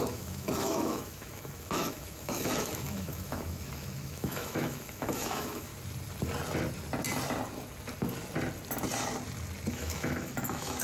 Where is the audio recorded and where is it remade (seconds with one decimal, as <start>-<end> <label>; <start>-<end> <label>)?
0.0-5.7 remade; 5.7-9.7 recorded; 9.7-10.8 remade